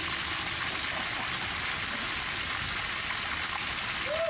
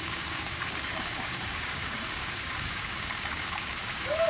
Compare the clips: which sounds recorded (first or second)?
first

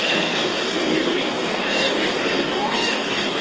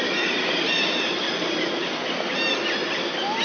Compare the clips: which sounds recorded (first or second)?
second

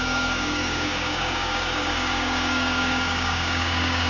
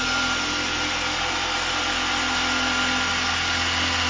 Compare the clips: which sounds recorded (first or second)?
second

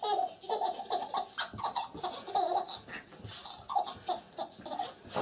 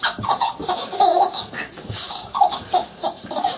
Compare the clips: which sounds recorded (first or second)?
first